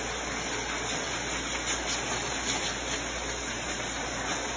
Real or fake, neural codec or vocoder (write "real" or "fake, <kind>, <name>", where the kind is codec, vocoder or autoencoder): real